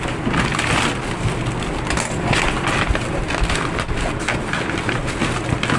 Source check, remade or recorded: recorded